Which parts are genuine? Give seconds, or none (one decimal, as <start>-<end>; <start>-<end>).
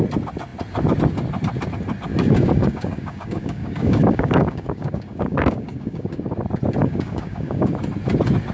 0.0-2.1; 6.3-6.8; 7.7-8.5